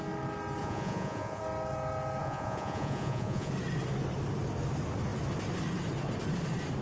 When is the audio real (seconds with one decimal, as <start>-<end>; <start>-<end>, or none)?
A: 0.0-0.6; 1.4-2.2; 3.5-6.8